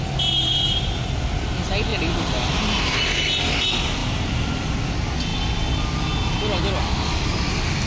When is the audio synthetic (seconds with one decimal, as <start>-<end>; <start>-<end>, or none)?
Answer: 1.9-2.9; 4.0-4.8